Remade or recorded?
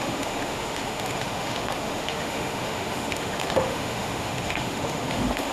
remade